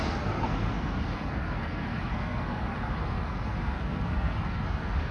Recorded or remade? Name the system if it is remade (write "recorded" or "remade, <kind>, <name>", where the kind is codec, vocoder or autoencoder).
remade, codec, SNAC